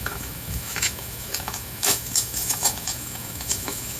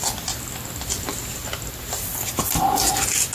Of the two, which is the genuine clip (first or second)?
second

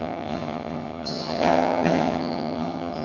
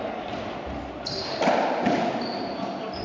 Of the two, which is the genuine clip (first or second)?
second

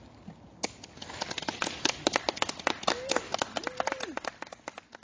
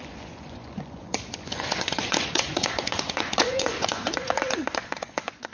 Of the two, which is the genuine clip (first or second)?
first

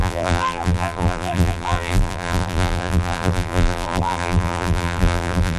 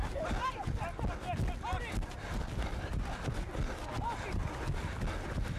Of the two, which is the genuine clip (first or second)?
second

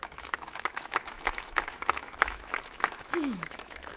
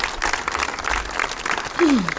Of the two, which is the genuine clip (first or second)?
second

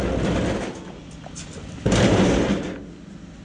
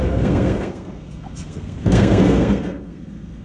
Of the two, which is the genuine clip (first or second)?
first